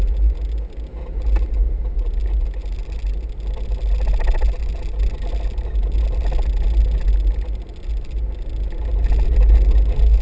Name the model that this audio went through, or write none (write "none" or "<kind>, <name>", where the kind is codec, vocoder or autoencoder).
none